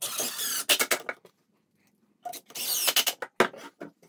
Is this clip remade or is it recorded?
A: recorded